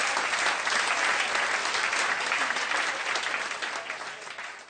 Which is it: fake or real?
real